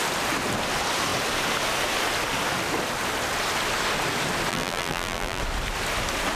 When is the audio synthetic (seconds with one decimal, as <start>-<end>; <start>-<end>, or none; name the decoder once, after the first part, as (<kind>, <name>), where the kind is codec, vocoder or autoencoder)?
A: 4.5-5.4 (vocoder, BigVGAN v2)

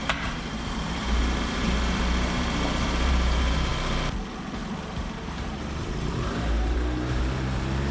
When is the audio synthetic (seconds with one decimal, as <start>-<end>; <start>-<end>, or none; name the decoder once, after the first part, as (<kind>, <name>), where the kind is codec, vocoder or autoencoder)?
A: 0.0-3.7 (vocoder, BigVGAN v2); 4.9-7.9

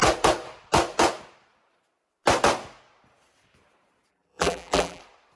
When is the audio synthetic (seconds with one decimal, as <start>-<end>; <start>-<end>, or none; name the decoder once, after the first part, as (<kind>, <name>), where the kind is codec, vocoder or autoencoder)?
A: 4.1-5.0 (vocoder, BigVGAN v2)

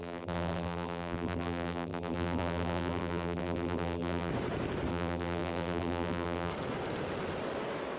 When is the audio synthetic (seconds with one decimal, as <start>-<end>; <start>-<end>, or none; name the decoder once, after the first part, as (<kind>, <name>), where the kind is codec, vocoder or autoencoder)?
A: 0.0-4.3 (vocoder, BigVGAN v2); 4.9-6.5